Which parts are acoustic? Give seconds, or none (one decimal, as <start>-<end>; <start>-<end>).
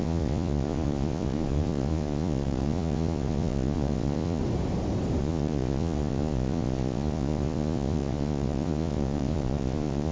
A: 4.4-5.2